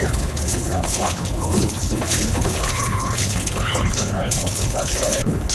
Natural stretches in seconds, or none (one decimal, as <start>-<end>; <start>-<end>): none